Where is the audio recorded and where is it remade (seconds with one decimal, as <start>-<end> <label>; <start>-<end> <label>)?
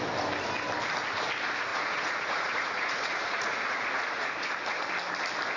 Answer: 0.0-1.7 recorded; 1.7-4.5 remade; 4.5-5.6 recorded